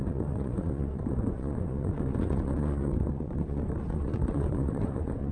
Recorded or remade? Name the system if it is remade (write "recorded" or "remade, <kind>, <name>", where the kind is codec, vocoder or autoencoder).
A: remade, vocoder, Vocos